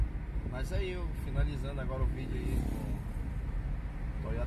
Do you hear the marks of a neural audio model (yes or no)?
no